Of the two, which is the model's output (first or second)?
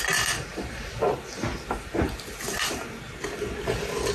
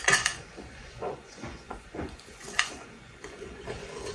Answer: second